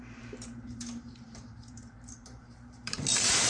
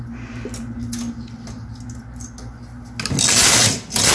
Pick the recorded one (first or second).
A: second